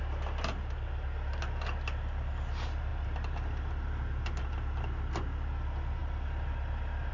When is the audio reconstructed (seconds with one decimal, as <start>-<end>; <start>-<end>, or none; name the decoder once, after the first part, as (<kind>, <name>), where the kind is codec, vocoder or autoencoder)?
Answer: none